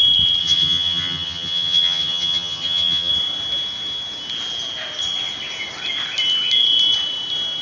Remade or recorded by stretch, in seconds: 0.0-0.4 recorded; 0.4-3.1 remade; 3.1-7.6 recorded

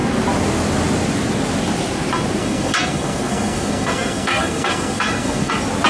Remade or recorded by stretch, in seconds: 0.0-2.4 recorded; 2.4-5.5 remade; 5.5-5.9 recorded

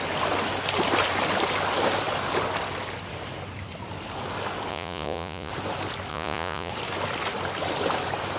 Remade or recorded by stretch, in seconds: 0.0-4.7 recorded; 4.7-5.5 remade; 5.5-6.1 recorded; 6.1-6.7 remade; 6.7-8.4 recorded

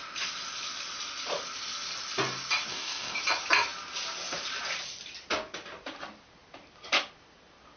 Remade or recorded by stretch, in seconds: 0.0-2.7 recorded; 2.7-3.2 remade; 3.2-7.8 recorded